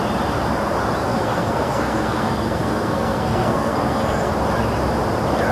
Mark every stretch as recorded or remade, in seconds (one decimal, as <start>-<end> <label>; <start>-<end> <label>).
0.0-1.0 recorded; 1.0-4.3 remade; 4.3-5.5 recorded